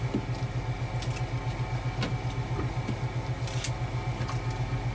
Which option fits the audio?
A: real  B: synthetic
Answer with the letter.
A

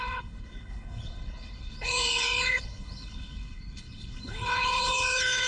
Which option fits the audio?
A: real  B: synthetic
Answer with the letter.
B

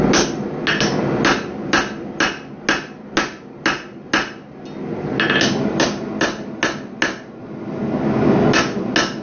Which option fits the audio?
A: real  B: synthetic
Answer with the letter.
A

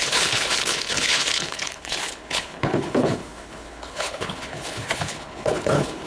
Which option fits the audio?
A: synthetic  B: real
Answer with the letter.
A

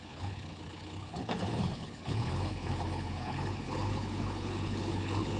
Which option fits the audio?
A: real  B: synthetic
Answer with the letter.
B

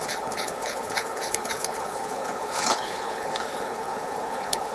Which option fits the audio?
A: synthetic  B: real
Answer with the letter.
A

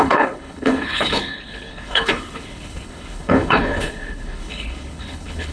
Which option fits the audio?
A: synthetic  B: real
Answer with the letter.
A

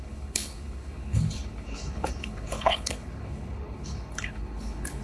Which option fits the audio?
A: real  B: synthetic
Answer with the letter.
B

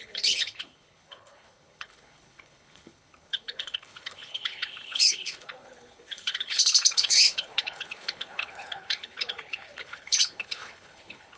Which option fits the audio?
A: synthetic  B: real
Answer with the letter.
A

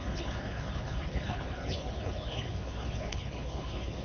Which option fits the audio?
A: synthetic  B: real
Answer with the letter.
A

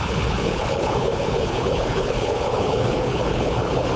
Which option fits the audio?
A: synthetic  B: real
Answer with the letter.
A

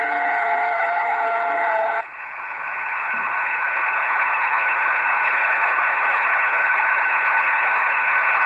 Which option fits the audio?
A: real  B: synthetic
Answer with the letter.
B